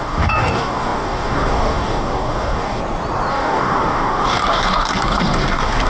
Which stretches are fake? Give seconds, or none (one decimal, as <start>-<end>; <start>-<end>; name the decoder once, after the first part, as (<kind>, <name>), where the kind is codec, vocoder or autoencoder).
0.0-2.8 (codec, DAC); 3.3-5.9